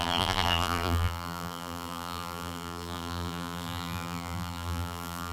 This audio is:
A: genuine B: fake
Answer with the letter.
B